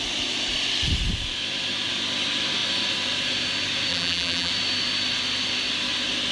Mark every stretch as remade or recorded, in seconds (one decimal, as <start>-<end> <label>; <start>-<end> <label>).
0.0-3.9 recorded; 3.9-4.5 remade; 4.5-6.3 recorded